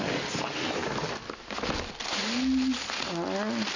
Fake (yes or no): no